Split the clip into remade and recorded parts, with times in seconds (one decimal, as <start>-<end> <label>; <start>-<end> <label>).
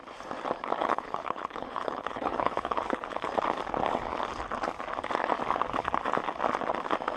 0.0-0.8 recorded; 0.8-3.3 remade; 3.3-7.2 recorded